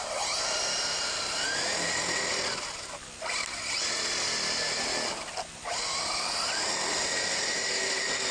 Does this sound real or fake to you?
real